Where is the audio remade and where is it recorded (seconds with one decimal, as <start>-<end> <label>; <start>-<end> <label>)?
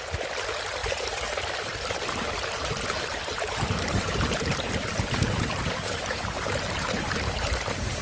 0.0-0.8 recorded; 0.8-1.4 remade; 1.4-3.2 recorded; 3.2-8.0 remade